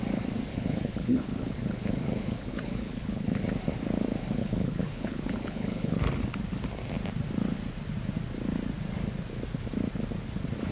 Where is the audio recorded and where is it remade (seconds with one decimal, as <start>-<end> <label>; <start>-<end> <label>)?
0.0-0.5 recorded; 0.5-3.4 remade; 3.4-4.4 recorded; 4.4-6.0 remade; 6.0-10.7 recorded